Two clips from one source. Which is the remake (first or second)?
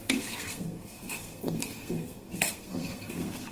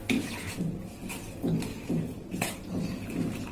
first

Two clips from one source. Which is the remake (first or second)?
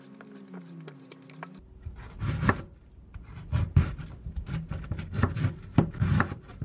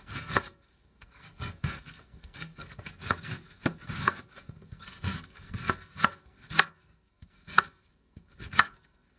second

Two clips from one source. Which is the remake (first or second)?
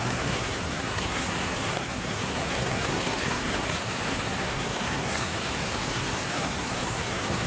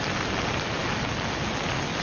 first